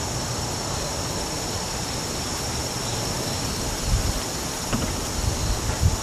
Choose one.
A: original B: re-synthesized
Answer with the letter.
A